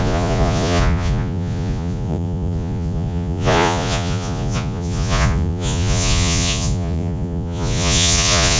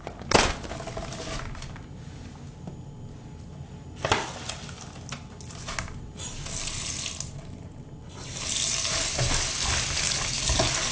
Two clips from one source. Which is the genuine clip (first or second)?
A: second